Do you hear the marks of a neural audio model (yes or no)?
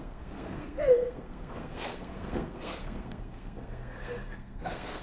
yes